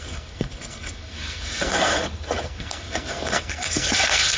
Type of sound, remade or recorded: remade